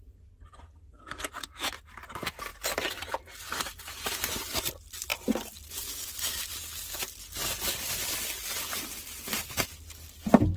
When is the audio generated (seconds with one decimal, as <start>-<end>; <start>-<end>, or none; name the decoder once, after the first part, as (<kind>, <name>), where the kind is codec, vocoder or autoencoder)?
none